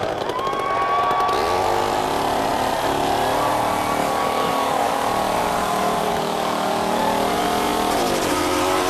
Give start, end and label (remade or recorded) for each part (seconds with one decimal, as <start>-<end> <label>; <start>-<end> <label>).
0.0-4.0 recorded; 4.0-5.1 remade; 5.1-5.6 recorded; 5.6-7.0 remade; 7.0-8.9 recorded